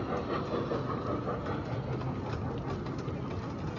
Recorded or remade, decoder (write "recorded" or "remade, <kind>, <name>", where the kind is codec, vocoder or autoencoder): recorded